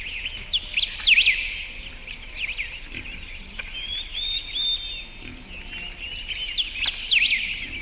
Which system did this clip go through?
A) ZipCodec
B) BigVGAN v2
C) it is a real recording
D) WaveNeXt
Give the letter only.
C